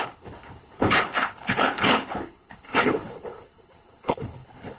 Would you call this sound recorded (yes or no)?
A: no